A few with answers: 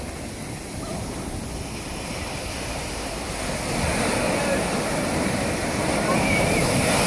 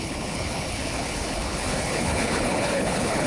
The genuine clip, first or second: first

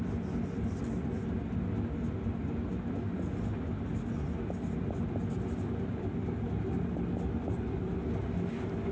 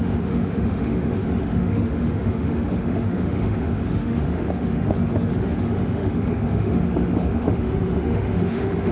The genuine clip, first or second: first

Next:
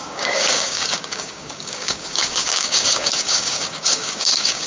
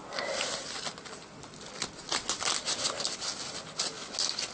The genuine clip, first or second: second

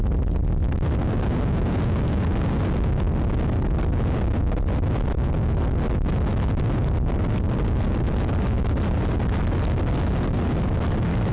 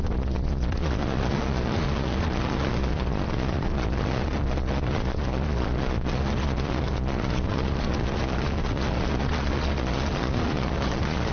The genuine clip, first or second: first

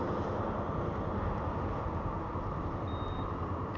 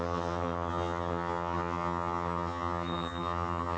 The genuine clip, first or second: first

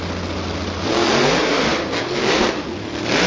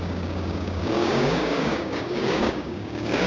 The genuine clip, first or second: first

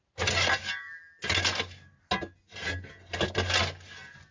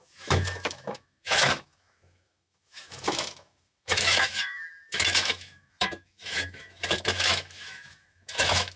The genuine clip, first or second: first